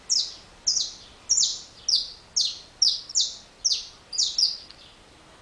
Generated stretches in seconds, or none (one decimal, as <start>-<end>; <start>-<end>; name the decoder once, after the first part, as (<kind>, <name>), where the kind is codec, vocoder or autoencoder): none